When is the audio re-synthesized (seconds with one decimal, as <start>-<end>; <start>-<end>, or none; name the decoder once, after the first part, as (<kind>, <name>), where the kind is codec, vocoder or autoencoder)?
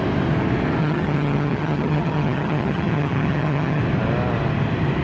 0.8-3.8 (vocoder, HiFi-GAN)